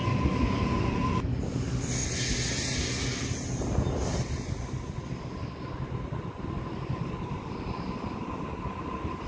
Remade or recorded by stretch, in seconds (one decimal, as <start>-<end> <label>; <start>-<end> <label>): 0.0-9.3 recorded